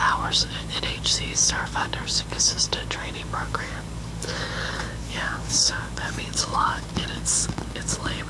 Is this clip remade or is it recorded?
remade